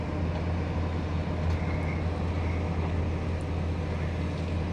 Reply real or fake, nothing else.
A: real